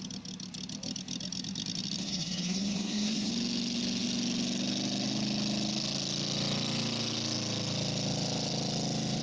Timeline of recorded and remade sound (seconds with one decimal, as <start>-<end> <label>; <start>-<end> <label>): 0.0-2.0 recorded; 2.0-3.3 remade; 3.3-9.2 recorded